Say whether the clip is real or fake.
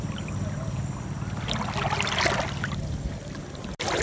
real